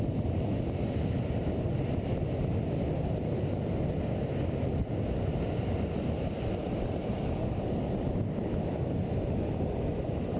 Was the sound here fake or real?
real